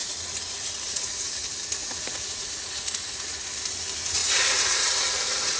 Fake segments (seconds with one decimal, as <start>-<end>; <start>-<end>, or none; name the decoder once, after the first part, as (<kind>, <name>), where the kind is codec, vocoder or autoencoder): 0.0-3.4 (vocoder, Vocos); 4.2-5.6